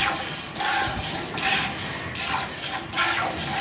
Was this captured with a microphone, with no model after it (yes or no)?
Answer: yes